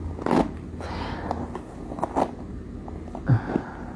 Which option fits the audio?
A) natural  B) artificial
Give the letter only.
A